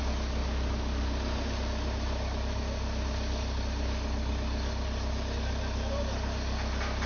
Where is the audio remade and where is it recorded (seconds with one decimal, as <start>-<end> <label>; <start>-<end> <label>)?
0.0-7.1 recorded